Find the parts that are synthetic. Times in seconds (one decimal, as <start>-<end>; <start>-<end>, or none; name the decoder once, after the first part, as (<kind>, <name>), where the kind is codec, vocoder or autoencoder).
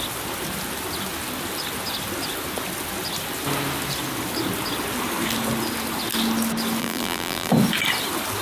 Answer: 6.8-7.5 (vocoder, BigVGAN v2)